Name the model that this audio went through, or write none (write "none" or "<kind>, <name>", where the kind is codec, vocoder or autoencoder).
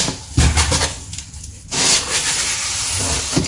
none